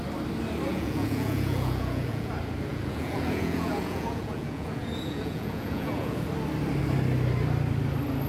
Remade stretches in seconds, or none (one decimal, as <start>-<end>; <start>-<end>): 0.7-2.3; 2.7-6.3